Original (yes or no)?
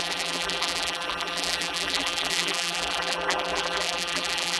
no